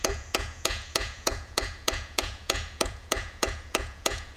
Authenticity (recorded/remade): remade